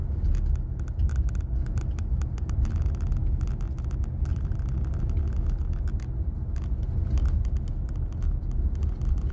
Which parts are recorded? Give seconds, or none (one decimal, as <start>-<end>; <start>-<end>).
0.0-4.3; 5.0-9.3